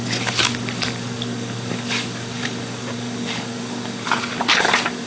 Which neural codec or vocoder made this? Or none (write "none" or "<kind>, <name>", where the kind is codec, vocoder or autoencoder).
codec, DAC